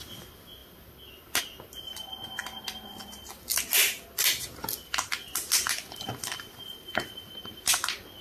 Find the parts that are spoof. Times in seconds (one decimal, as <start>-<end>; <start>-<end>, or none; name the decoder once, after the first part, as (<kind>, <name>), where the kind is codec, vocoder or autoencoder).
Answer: none